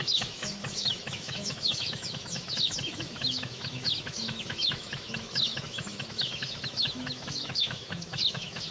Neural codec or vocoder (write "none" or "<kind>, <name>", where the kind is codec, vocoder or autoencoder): autoencoder, DAC-VAE